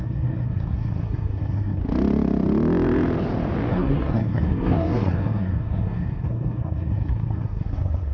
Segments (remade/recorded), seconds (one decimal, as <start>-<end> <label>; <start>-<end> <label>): 0.0-1.8 remade; 1.8-3.7 recorded; 3.7-8.1 remade